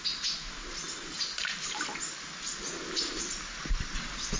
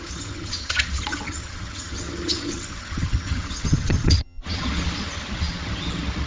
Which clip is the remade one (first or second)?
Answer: second